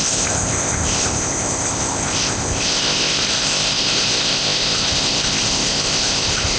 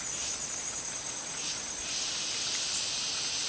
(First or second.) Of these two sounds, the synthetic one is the first